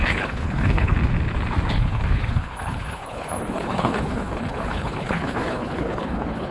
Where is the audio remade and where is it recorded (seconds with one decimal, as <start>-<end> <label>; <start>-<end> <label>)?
0.0-0.9 remade; 0.9-1.7 recorded; 1.7-6.5 remade